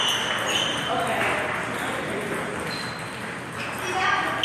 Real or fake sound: real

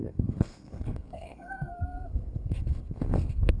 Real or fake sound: fake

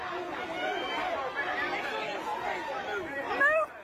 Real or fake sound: real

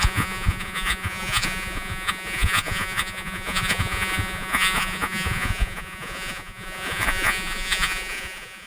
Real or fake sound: fake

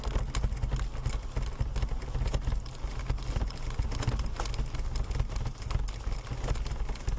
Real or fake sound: real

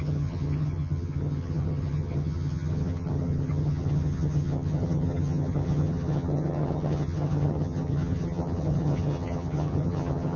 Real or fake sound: fake